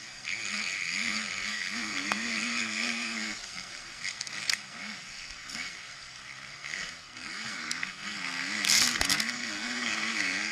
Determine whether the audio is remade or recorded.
remade